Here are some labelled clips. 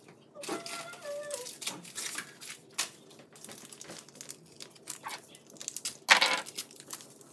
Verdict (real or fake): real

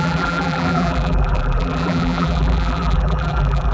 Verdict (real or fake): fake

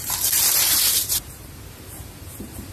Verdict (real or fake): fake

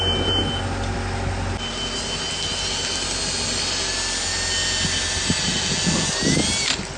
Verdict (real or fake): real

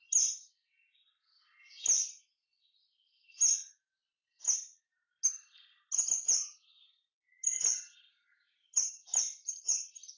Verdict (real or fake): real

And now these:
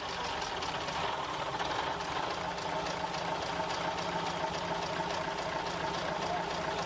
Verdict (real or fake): real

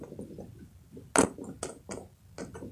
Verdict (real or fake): real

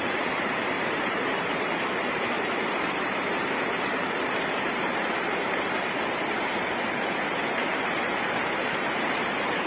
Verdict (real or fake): fake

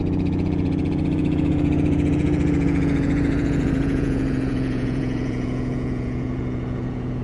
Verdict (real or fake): fake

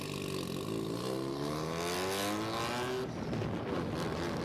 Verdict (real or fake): real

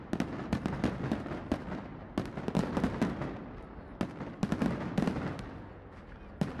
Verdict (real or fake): real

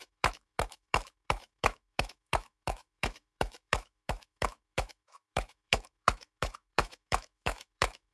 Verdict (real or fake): fake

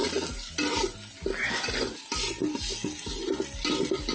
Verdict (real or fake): real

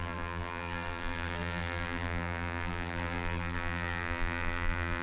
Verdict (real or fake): fake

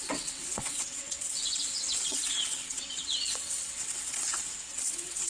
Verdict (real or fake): fake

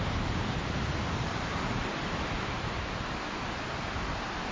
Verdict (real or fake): real